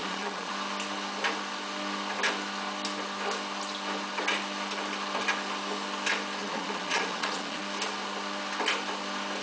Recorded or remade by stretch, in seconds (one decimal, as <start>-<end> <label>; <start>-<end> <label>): 0.0-0.5 remade; 0.5-6.4 recorded; 6.4-7.6 remade; 7.6-9.4 recorded